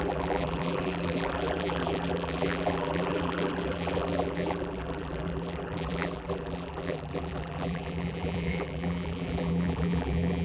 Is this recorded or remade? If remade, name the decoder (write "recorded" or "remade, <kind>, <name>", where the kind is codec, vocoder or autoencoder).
remade, vocoder, BigVGAN v2